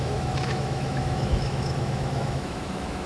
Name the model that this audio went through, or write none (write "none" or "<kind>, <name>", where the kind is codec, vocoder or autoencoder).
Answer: autoencoder, DAC-VAE